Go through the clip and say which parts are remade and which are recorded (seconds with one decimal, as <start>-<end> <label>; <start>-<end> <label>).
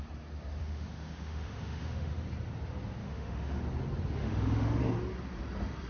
0.0-0.6 recorded; 0.6-2.1 remade; 2.1-3.0 recorded; 3.0-3.6 remade; 3.6-4.2 recorded; 4.2-4.8 remade; 4.8-5.9 recorded